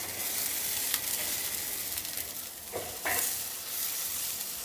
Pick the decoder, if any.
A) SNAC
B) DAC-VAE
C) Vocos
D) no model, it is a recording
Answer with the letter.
D